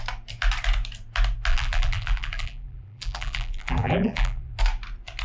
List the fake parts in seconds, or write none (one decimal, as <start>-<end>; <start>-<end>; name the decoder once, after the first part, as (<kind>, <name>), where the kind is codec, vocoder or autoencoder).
1.5-4.6 (vocoder, BigVGAN v2)